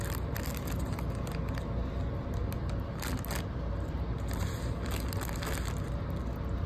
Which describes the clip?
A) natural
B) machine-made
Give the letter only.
A